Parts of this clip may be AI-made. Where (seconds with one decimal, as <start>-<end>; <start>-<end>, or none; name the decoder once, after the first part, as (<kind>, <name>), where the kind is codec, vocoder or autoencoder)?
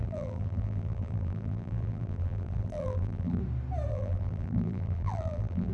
0.0-3.4 (vocoder, BigVGAN v2); 3.9-5.7